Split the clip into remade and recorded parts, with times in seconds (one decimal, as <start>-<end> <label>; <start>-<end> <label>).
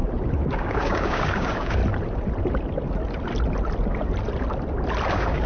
0.0-0.5 recorded; 0.5-1.8 remade; 1.8-5.1 recorded; 5.1-5.5 remade